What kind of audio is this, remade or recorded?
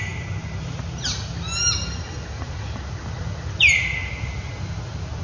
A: recorded